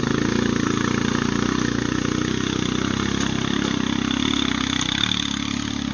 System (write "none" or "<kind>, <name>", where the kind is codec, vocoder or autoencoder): none